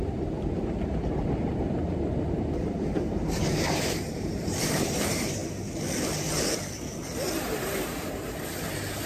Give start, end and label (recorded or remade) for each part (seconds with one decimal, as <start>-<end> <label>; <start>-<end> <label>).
0.0-5.4 remade; 5.4-9.1 recorded